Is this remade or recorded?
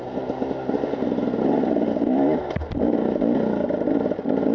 recorded